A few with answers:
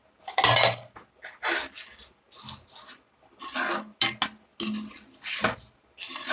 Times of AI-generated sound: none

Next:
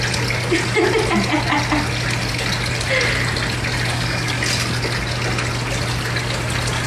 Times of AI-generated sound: 3.9-4.4 (codec, DAC)

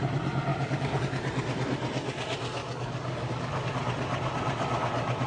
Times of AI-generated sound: 0.5-1.0 (codec, DAC); 2.6-3.7

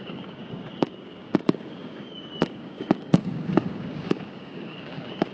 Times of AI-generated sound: 0.0-5.3 (codec, DAC)